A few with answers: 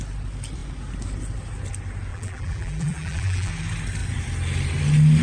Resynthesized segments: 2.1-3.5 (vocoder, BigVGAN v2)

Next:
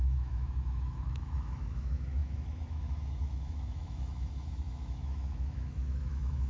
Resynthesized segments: 0.0-6.5 (autoencoder, DAC-VAE)

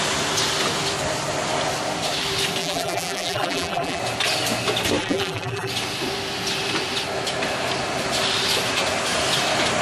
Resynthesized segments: 2.6-4.0 (vocoder, BigVGAN v2); 5.0-5.7

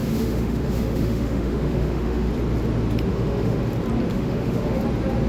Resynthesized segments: 0.0-2.3 (autoencoder, DAC-VAE); 3.1-3.6; 4.1-4.8

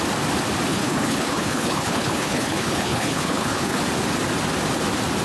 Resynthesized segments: 0.7-3.8 (codec, HILCodec)

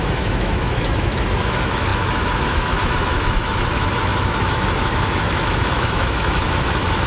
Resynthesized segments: 0.0-7.1 (autoencoder, DAC-VAE)